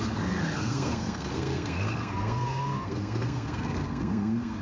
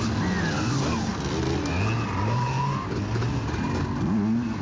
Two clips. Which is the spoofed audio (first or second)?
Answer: first